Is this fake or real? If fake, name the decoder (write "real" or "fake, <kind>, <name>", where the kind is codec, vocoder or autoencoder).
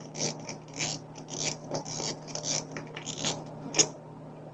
real